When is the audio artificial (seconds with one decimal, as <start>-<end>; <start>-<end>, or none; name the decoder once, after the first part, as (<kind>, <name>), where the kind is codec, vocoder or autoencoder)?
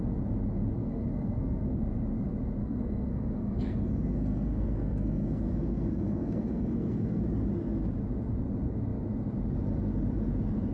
0.8-1.8 (codec, SNAC); 2.6-7.2